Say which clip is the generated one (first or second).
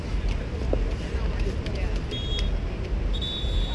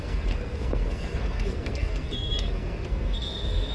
second